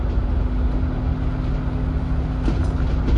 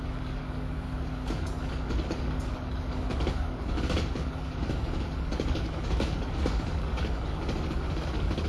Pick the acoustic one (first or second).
first